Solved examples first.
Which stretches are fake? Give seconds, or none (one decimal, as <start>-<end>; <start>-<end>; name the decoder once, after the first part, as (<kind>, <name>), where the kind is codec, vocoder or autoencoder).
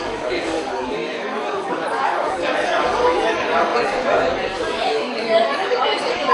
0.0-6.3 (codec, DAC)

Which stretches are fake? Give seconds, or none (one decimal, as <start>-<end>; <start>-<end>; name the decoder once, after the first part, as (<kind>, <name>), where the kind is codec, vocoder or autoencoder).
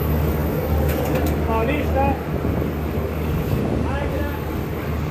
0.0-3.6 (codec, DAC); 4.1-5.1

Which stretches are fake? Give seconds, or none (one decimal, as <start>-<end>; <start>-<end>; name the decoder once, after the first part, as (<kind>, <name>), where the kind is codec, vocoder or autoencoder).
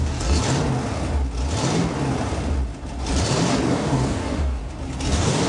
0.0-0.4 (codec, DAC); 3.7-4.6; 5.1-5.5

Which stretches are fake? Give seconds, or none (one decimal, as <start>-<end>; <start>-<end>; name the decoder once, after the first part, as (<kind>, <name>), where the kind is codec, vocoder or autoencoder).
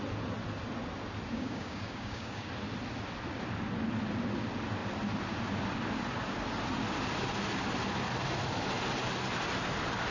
1.3-2.5 (codec, DAC)